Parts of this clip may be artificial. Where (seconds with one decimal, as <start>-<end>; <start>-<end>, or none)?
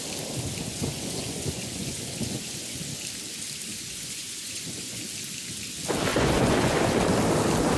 0.7-2.8; 3.7-5.0; 6.1-6.9